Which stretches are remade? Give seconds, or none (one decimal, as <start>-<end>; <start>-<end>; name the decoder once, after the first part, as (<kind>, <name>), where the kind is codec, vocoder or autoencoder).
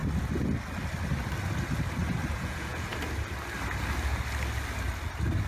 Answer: 2.3-2.9 (vocoder, Vocos)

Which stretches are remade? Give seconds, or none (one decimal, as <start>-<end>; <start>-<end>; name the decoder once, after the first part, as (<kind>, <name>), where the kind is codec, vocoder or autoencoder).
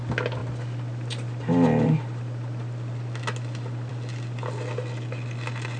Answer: none